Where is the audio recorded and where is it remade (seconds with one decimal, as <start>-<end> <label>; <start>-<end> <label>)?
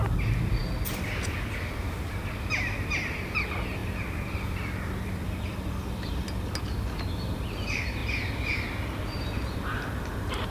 0.0-10.5 recorded